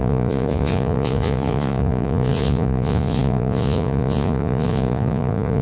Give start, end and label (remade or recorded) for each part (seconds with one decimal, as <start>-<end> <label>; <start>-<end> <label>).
0.0-5.6 remade